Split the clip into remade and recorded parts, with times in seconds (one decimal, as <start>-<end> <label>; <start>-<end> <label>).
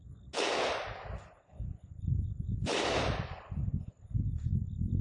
0.0-5.0 recorded